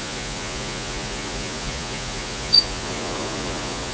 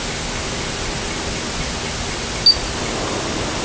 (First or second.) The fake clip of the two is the first